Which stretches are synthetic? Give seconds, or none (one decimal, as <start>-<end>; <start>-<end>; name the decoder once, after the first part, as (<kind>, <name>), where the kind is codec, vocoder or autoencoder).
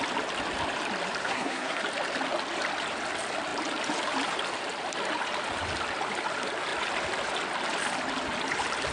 1.2-1.8 (codec, SNAC)